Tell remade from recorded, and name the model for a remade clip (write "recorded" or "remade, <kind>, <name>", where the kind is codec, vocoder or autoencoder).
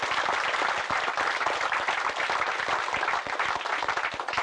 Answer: recorded